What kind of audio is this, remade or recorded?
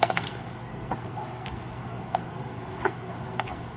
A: remade